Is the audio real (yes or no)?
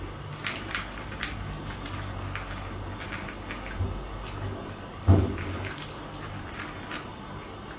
yes